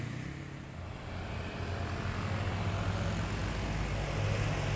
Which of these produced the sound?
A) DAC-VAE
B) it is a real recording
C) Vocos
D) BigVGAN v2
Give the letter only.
B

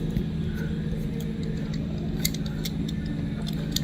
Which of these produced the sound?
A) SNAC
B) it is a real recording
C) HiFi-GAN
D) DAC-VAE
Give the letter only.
B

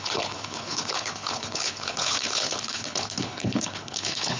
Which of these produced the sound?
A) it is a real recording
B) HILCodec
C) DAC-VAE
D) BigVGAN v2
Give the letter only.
B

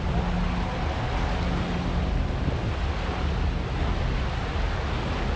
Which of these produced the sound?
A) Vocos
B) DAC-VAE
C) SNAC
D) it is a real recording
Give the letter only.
D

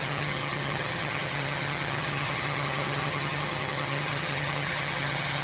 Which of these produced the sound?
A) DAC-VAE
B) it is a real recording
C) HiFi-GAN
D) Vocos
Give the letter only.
C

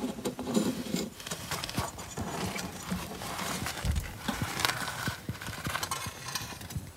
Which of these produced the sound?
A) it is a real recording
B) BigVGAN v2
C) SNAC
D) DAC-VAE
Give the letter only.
B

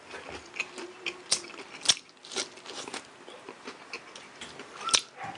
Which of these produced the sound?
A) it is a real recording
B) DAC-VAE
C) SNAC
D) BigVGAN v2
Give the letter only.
A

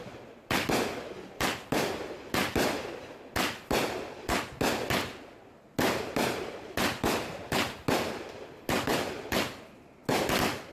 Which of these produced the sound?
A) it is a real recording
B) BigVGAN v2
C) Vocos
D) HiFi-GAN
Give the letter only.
A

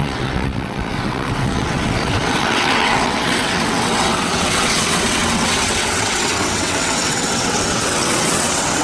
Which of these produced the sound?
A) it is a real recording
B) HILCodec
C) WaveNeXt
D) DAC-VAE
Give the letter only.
C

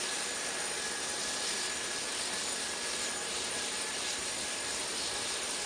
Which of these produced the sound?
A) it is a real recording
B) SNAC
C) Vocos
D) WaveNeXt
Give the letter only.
A